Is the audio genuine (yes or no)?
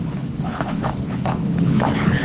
no